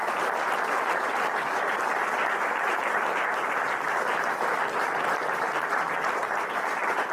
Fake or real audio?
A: fake